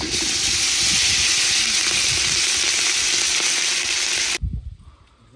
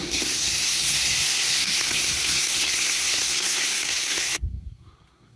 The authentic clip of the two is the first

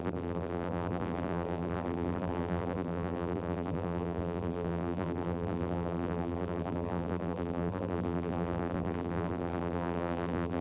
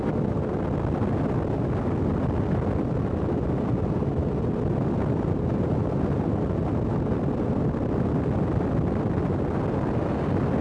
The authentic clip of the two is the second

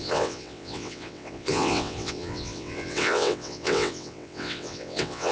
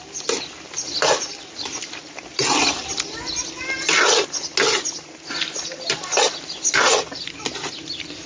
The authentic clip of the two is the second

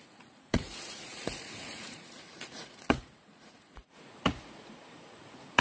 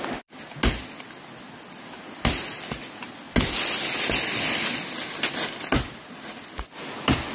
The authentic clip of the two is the second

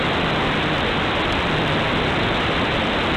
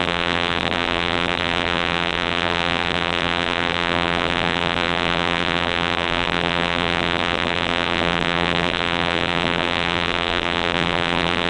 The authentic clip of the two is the first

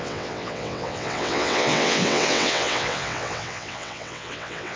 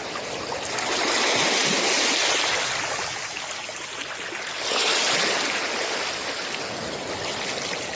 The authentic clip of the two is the second